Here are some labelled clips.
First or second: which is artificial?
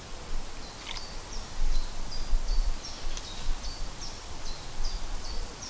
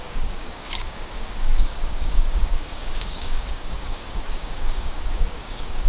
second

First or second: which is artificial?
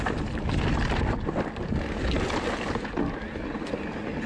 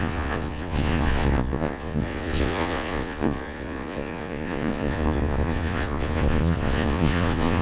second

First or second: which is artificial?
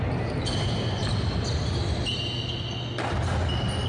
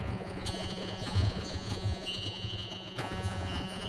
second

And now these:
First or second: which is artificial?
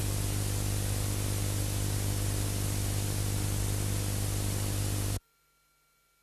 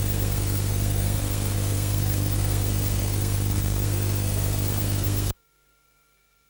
second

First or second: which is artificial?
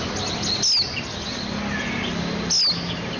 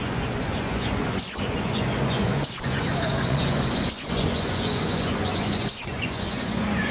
second